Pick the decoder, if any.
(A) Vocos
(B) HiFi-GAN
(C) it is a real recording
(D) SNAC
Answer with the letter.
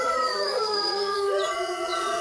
A